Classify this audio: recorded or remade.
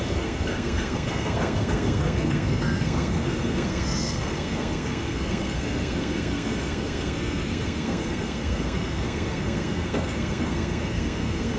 remade